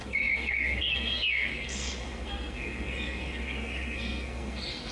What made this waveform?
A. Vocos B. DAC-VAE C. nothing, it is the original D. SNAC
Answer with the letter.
D